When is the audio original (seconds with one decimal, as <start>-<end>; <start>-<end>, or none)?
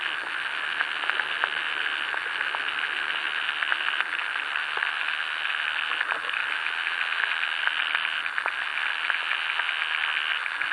0.0-10.7